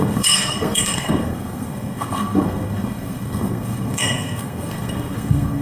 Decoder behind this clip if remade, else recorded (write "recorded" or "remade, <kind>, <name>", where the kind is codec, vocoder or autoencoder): remade, codec, SNAC